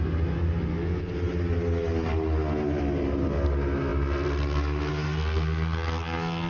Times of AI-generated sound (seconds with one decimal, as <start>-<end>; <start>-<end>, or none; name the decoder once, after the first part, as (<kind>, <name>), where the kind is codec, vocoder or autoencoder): none

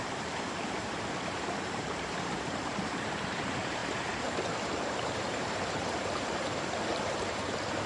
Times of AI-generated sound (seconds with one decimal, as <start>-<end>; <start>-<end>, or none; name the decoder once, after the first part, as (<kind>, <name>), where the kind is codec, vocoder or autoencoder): 0.0-7.9 (vocoder, BigVGAN v2)